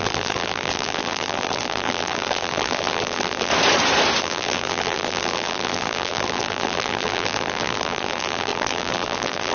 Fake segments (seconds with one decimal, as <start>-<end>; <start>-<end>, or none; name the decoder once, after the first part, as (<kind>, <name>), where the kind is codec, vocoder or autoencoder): 0.0-3.5 (vocoder, BigVGAN v2); 4.2-9.5